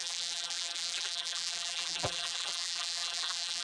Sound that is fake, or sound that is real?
fake